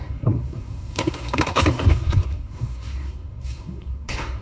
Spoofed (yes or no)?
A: yes